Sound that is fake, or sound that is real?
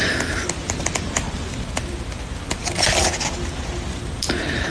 real